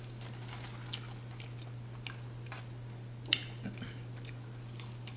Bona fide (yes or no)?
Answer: yes